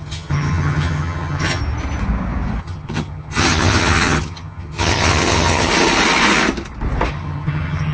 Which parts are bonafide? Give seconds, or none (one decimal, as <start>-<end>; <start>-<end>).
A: 1.6-2.6; 5.7-7.1